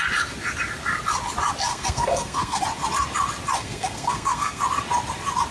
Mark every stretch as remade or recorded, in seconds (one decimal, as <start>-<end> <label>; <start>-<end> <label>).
0.0-1.7 recorded; 1.7-2.6 remade; 2.6-3.6 recorded; 3.6-4.6 remade; 4.6-5.5 recorded